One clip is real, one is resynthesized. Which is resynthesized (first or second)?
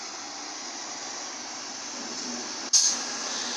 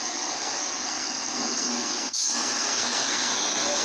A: second